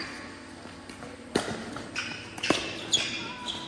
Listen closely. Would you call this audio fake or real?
real